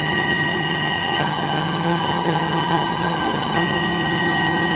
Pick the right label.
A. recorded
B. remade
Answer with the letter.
B